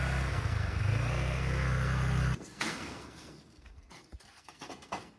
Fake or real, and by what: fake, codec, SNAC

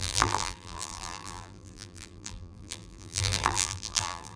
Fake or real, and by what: fake, vocoder, BigVGAN v2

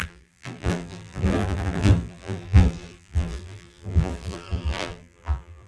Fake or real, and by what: fake, vocoder, BigVGAN v2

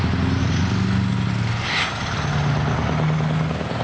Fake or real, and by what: real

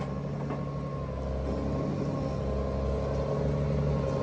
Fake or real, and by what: real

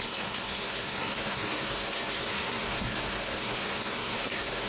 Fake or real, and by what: fake, codec, SNAC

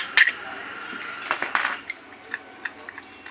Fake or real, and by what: real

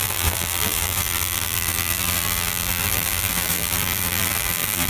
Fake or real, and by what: fake, vocoder, BigVGAN v2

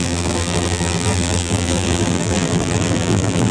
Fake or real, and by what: fake, vocoder, BigVGAN v2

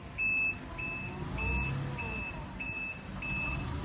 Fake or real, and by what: real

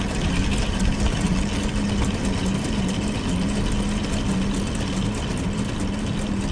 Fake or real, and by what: real